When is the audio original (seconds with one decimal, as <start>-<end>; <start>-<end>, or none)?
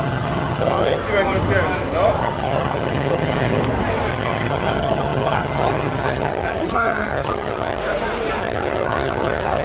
1.0-2.2; 3.6-4.1; 7.8-8.4